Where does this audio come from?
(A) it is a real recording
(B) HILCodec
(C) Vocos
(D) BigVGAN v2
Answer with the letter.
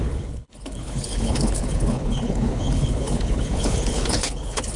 B